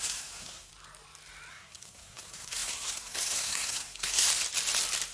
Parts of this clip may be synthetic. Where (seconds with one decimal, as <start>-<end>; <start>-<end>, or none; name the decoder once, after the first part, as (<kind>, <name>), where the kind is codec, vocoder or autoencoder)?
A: 0.0-0.7 (codec, SNAC); 1.5-4.3